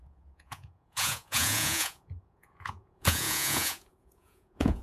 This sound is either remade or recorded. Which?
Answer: remade